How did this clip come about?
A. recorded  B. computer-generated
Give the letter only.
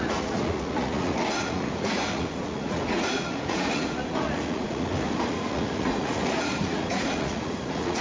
B